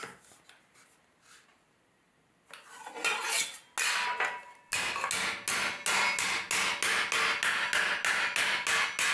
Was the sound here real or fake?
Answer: real